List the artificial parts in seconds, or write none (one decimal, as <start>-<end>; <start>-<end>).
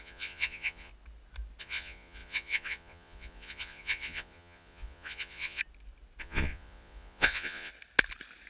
0.0-0.9; 1.6-5.6; 6.2-7.7